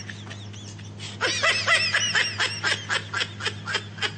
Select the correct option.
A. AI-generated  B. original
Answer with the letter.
B